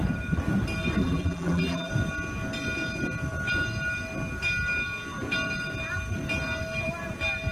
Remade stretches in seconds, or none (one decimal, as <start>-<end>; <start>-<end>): 1.0-1.9